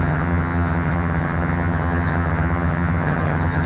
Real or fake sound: fake